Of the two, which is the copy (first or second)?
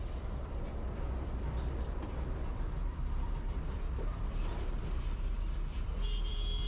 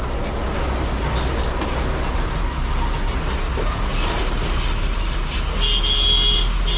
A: first